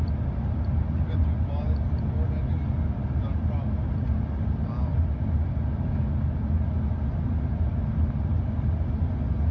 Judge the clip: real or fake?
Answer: real